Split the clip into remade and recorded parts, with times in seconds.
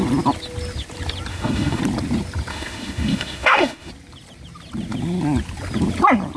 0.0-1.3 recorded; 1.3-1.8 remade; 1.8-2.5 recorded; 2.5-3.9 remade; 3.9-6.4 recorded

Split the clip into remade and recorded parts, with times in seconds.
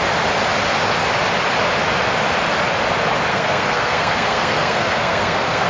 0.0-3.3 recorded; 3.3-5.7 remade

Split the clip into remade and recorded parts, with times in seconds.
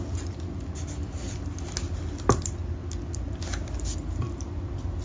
0.0-5.0 recorded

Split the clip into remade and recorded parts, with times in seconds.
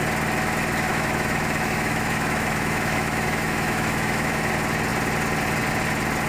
0.0-0.9 recorded; 0.9-4.5 remade; 4.5-6.3 recorded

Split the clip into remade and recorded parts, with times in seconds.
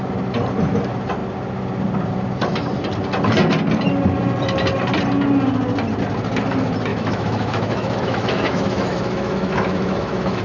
0.0-6.9 recorded; 6.9-10.4 remade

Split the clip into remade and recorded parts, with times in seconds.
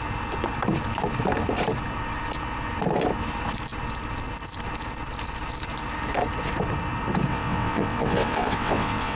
0.0-7.3 recorded; 7.3-9.2 remade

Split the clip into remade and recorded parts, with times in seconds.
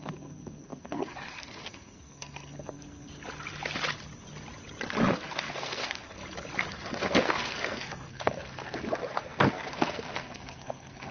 0.0-3.1 remade; 3.1-5.1 recorded; 5.1-6.2 remade; 6.2-6.7 recorded; 6.7-11.1 remade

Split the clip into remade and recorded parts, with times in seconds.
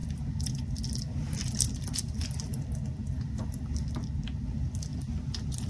0.0-5.7 recorded